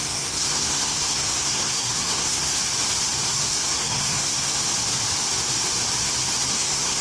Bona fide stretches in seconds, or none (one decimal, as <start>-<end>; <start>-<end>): 2.6-3.3; 4.6-6.5